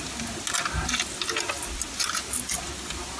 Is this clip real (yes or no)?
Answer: yes